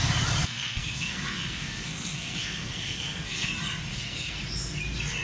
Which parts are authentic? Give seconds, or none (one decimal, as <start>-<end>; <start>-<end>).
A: 0.0-0.4; 3.5-3.9; 4.4-5.2